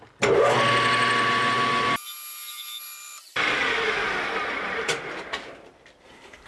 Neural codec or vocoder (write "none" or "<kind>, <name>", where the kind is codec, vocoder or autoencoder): none